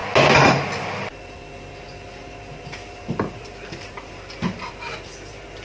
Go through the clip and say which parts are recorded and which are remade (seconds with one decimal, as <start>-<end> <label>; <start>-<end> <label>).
0.0-5.6 recorded